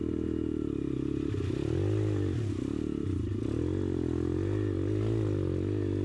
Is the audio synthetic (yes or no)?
no